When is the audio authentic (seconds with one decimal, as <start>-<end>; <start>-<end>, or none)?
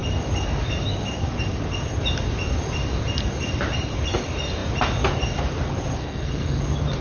0.0-6.0; 6.6-7.0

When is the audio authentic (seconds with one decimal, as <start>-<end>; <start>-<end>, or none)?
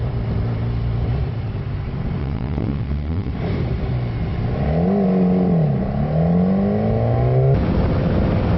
0.0-2.2; 3.3-8.6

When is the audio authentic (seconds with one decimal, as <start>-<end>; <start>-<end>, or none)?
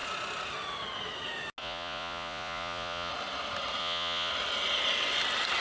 0.0-1.6; 3.1-3.8; 4.3-5.6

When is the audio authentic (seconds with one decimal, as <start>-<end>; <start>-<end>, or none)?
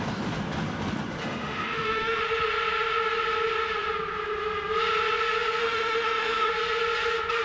0.0-1.2; 2.2-5.6; 6.5-7.4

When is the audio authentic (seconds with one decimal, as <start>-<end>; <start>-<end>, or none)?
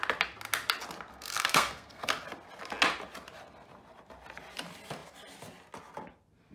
0.0-1.1; 2.1-6.5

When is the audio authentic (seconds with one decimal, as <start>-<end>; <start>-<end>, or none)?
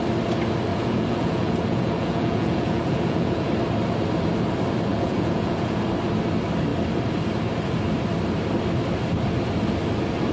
0.0-0.7; 3.5-4.9; 5.8-10.3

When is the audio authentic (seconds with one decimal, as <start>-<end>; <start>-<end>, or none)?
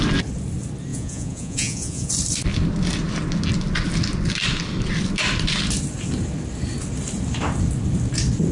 0.0-0.9; 2.1-8.5